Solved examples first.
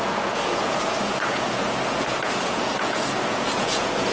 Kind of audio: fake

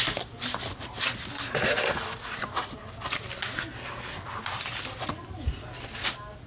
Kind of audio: real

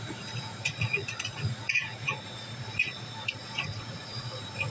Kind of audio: fake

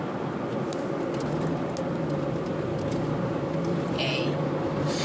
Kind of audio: real